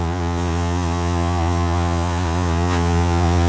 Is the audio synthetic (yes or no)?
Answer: yes